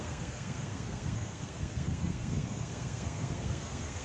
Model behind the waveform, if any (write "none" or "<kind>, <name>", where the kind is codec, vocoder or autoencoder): codec, SNAC